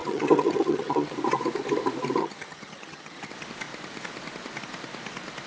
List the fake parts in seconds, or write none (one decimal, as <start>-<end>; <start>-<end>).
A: 0.0-1.1; 2.2-3.3